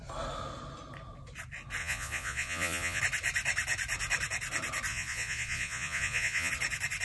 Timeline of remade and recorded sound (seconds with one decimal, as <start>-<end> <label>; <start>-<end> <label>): 0.0-1.8 recorded; 1.8-3.0 remade; 3.0-4.9 recorded; 4.9-6.5 remade; 6.5-7.0 recorded